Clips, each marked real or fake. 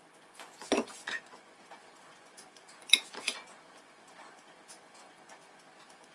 fake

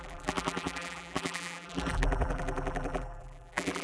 fake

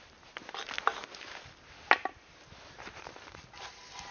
real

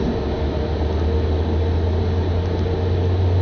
real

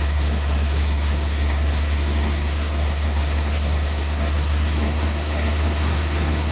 fake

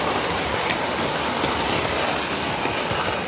real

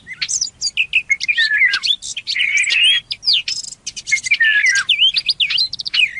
real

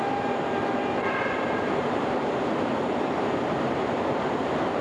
fake